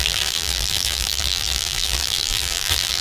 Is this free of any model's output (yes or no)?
no